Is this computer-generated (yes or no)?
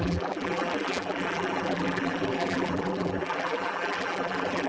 yes